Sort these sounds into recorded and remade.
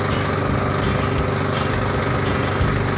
recorded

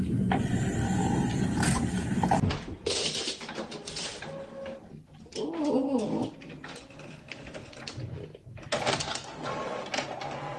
recorded